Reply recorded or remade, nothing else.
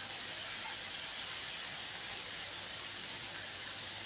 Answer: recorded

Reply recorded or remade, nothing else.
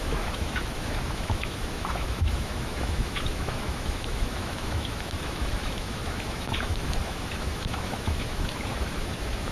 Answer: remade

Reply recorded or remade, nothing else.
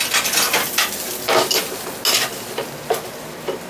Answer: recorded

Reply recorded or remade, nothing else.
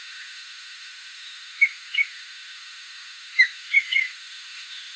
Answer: remade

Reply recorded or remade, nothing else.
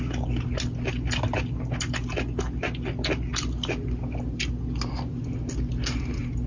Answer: recorded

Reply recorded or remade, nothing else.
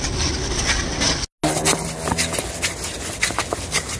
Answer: recorded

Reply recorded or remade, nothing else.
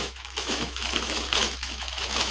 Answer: remade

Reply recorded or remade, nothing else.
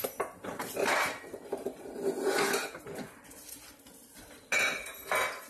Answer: recorded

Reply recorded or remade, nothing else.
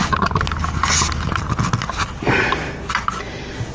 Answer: recorded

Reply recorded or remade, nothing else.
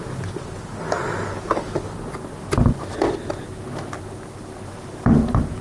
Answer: recorded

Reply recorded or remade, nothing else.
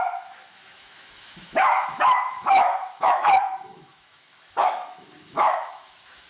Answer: remade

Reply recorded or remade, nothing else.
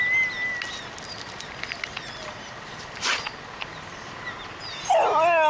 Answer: recorded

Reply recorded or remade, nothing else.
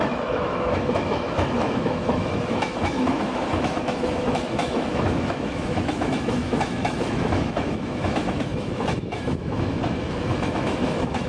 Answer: remade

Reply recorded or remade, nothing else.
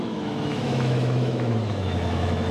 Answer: remade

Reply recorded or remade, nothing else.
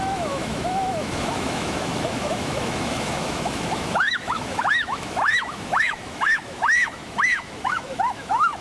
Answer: remade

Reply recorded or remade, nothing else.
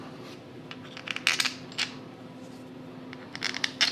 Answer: recorded